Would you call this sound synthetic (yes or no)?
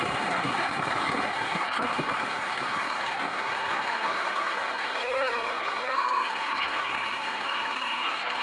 yes